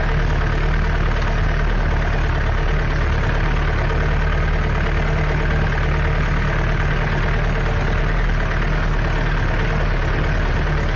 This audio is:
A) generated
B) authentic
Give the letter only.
B